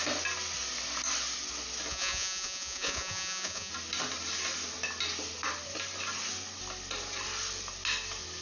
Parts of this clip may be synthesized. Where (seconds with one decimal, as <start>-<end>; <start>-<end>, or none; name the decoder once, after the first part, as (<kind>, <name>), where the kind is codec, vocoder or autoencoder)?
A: 1.9-3.7 (vocoder, Vocos)